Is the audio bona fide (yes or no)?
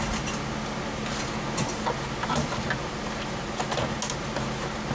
yes